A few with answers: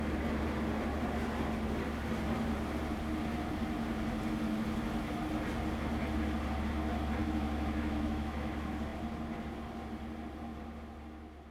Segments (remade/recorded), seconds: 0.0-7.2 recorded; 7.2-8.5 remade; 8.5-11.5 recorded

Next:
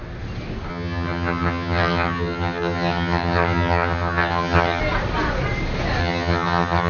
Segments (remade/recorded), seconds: 0.0-0.7 recorded; 0.7-4.8 remade; 4.8-6.0 recorded; 6.0-6.9 remade

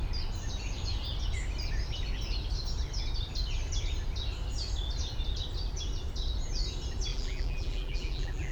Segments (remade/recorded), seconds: 0.0-7.1 recorded; 7.1-8.5 remade